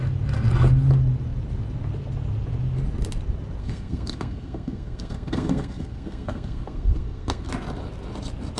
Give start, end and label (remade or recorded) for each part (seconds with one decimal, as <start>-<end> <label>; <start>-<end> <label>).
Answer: 0.0-3.6 recorded; 3.6-7.5 remade; 7.5-8.6 recorded